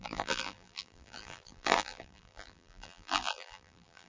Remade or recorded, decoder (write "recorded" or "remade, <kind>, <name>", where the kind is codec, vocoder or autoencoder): remade, vocoder, BigVGAN v2